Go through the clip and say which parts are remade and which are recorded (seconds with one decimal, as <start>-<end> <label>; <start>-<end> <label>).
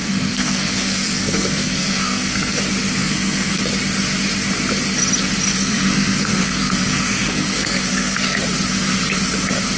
0.0-2.6 remade; 2.6-3.0 recorded; 3.0-3.6 remade; 3.6-5.5 recorded; 5.5-8.4 remade; 8.4-9.8 recorded